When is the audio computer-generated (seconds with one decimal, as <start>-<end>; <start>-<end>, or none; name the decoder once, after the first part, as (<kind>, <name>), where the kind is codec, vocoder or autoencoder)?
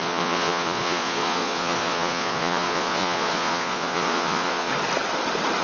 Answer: 0.0-4.7 (vocoder, Vocos)